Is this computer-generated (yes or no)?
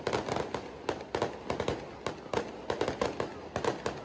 no